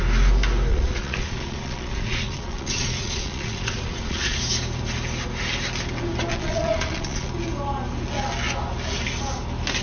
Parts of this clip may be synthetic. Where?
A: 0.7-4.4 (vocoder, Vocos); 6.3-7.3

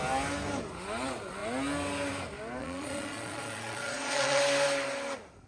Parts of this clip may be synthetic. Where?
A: 2.6-4.4 (vocoder, Vocos)

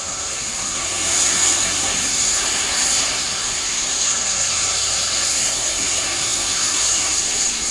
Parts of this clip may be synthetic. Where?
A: 0.0-7.7 (codec, SNAC)

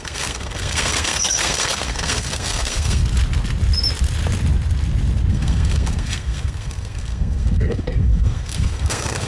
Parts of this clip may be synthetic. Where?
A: 0.0-3.0 (codec, SNAC); 5.3-9.3

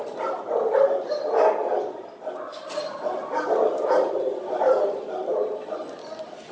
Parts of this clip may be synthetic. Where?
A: none